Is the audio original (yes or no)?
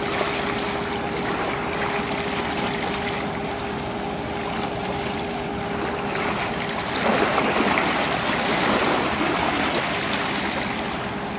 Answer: yes